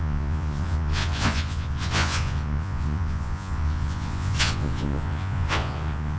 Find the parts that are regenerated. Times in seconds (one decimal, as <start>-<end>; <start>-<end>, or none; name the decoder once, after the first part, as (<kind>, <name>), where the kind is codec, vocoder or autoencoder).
0.0-6.2 (vocoder, Vocos)